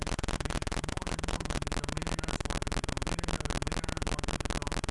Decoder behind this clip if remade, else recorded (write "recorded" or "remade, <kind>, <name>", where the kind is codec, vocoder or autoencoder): recorded